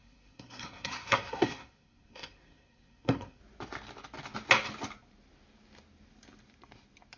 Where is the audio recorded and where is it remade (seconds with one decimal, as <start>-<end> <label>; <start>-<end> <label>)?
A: 0.0-3.4 remade; 3.4-7.2 recorded